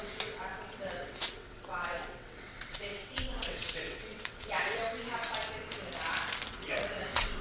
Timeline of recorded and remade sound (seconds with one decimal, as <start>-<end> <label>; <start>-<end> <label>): 0.0-4.8 remade; 4.8-6.5 recorded; 6.5-7.4 remade